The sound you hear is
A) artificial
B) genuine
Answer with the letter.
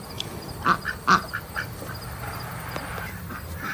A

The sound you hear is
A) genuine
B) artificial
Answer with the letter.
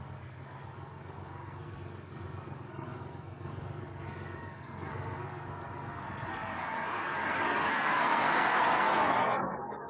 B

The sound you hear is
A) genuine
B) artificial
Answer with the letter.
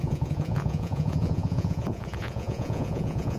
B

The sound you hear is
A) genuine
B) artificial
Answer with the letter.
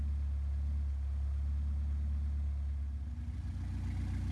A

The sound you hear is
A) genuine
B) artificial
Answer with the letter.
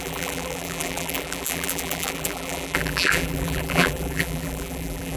B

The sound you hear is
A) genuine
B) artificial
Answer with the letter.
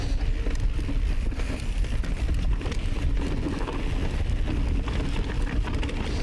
A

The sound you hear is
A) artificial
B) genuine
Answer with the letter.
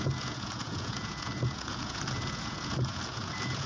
A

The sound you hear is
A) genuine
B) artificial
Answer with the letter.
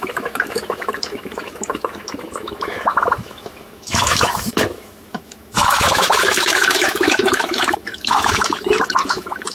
B